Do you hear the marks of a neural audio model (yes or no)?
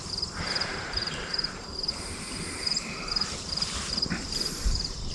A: yes